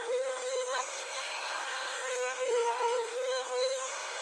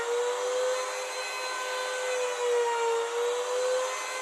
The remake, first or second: first